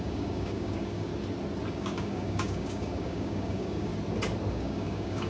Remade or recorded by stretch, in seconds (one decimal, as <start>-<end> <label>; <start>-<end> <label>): 0.0-1.1 remade; 1.1-1.7 recorded; 1.7-3.9 remade; 3.9-4.5 recorded; 4.5-5.3 remade